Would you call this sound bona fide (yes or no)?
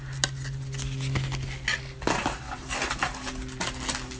yes